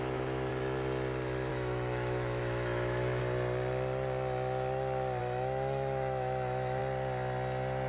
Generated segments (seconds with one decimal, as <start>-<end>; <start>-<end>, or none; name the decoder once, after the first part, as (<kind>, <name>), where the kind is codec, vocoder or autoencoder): 0.0-0.5 (autoencoder, DAC-VAE); 1.5-3.2; 5.2-6.8